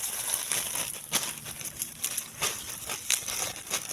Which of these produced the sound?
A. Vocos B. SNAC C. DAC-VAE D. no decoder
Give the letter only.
D